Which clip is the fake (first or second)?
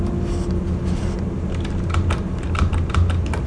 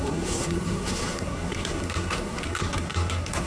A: second